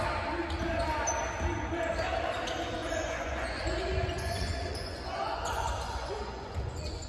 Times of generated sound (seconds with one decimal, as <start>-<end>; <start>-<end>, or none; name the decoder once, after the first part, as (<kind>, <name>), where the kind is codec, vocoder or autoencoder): 2.8-7.1 (vocoder, Vocos)